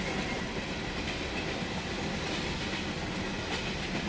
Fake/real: real